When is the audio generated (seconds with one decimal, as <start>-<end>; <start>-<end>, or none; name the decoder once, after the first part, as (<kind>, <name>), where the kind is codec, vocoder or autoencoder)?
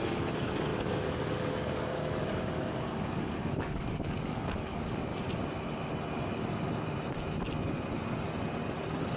0.0-5.1 (codec, DAC)